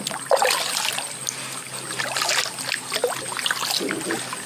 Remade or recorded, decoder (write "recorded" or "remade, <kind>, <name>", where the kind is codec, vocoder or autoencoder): recorded